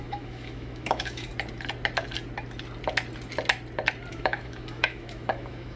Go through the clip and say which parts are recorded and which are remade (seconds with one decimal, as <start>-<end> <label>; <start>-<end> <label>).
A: 0.0-1.3 remade; 1.3-4.1 recorded; 4.1-5.8 remade